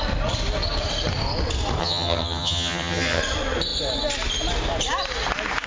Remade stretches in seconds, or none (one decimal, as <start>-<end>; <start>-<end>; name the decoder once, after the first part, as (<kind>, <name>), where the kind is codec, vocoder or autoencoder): 1.8-3.2 (vocoder, HiFi-GAN)